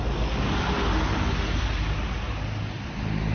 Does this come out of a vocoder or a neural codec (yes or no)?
no